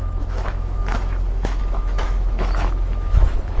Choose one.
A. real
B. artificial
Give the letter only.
B